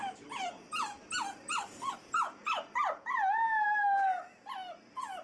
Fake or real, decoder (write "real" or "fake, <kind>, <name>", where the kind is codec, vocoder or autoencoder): real